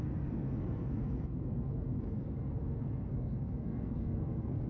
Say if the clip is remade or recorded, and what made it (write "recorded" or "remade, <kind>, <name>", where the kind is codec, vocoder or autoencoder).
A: remade, codec, SNAC